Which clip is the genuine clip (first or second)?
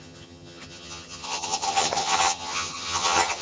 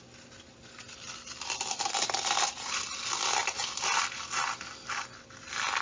second